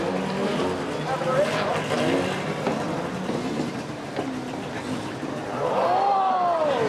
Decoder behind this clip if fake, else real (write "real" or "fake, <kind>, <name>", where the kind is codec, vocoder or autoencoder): real